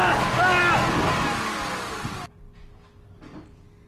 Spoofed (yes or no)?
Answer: no